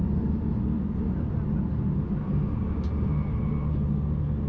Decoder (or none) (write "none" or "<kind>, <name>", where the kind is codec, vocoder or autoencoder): none